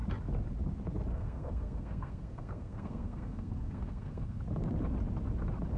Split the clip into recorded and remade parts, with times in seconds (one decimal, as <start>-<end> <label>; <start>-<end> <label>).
0.0-1.1 recorded; 1.1-4.4 remade; 4.4-5.8 recorded